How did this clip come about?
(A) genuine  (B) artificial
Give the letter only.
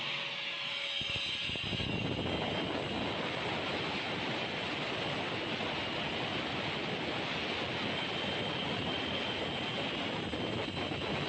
A